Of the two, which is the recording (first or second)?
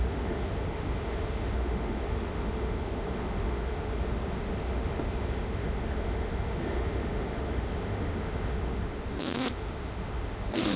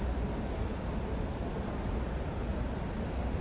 second